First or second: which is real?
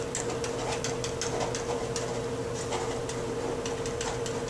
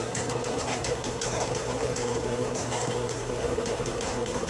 first